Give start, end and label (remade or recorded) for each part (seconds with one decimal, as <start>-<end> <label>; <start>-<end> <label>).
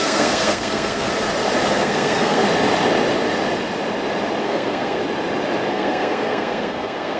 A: 0.0-1.1 remade; 1.1-1.7 recorded; 1.7-2.4 remade; 2.4-4.4 recorded; 4.4-5.0 remade; 5.0-5.7 recorded; 5.7-7.2 remade